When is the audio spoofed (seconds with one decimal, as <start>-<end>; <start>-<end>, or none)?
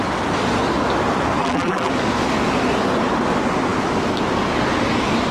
1.4-1.9